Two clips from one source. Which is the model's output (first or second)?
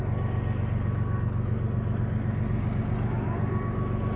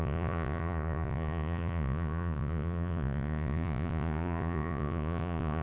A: second